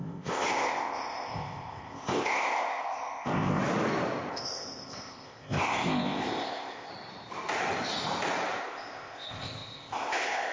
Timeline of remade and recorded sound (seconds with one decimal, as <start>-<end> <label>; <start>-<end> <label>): 0.0-3.6 remade; 3.6-4.3 recorded; 4.3-6.9 remade; 6.9-8.6 recorded; 8.6-10.5 remade

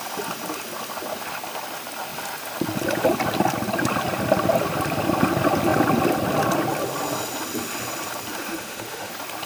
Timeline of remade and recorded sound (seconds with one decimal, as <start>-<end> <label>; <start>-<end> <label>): 0.0-8.4 recorded; 8.4-9.1 remade; 9.1-9.5 recorded